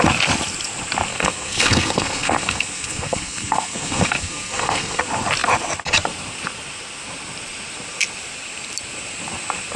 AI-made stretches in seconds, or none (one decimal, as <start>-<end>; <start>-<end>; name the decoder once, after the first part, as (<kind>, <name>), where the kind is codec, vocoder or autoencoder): 1.1-5.0 (codec, SNAC)